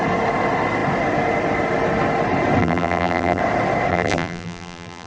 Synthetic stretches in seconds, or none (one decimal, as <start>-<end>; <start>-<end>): 2.6-3.4; 3.9-5.1